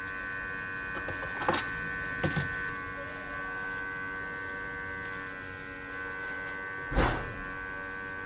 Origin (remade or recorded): recorded